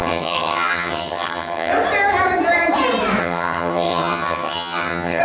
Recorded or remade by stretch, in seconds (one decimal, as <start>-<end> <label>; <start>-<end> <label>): 0.0-1.7 remade; 1.7-3.2 recorded; 3.2-5.2 remade